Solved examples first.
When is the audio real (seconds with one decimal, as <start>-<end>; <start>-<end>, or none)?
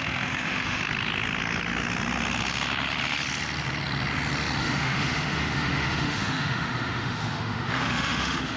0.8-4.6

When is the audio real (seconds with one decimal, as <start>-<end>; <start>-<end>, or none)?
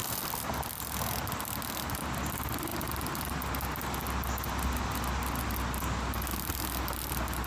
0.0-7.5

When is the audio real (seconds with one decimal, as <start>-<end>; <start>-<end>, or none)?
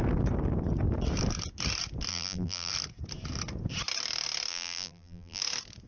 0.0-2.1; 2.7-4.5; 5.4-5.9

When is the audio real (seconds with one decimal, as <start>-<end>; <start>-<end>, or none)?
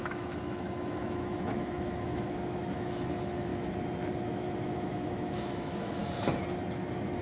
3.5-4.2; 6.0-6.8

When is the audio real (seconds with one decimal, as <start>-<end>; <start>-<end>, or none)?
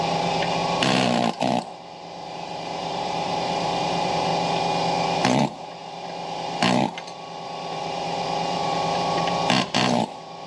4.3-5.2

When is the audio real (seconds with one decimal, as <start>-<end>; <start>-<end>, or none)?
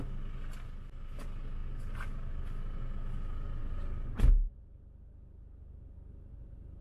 0.0-6.8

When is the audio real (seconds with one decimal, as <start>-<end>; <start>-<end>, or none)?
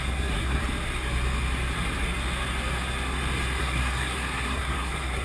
0.6-3.6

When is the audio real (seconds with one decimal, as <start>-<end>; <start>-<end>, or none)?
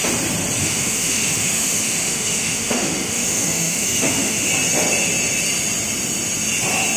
0.0-0.6; 4.5-7.0